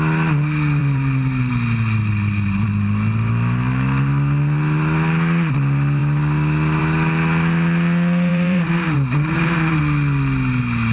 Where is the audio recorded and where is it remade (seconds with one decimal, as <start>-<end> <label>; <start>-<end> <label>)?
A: 0.0-0.8 recorded; 0.8-1.5 remade; 1.5-8.3 recorded; 8.3-9.8 remade; 9.8-10.9 recorded